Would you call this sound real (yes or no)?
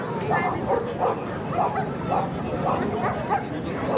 no